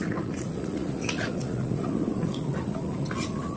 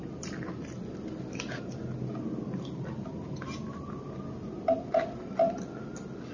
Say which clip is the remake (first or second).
first